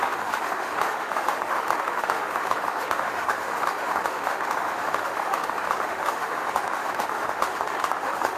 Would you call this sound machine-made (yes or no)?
yes